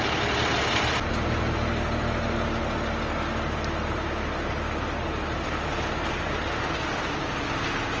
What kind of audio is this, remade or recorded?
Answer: recorded